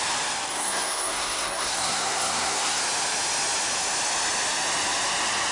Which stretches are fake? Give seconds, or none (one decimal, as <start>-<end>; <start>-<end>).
0.5-2.8